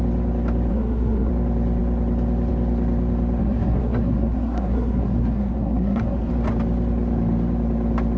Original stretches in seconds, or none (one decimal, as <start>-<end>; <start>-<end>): 0.0-0.7; 1.3-3.4; 6.3-8.2